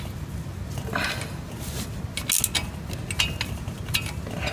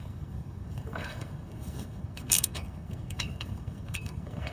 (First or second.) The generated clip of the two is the second